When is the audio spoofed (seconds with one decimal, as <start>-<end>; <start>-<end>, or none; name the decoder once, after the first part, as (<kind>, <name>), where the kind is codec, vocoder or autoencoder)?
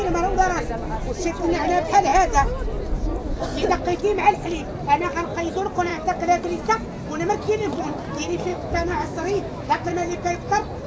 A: 8.5-9.9 (autoencoder, DAC-VAE)